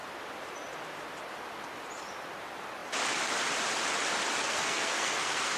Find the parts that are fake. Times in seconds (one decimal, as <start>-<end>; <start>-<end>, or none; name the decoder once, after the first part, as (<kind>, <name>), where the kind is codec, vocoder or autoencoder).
4.4-5.6 (codec, SNAC)